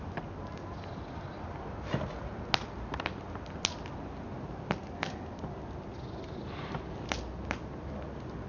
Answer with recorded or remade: recorded